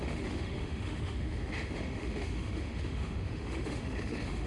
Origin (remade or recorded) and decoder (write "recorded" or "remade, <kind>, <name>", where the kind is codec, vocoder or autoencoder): remade, autoencoder, DAC-VAE